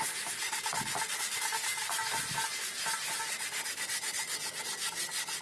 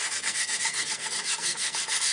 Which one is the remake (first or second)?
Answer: second